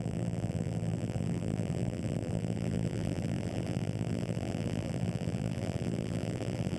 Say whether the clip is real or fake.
fake